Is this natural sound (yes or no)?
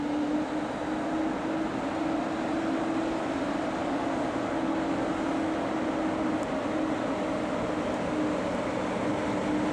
yes